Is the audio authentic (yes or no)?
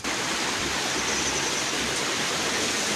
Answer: yes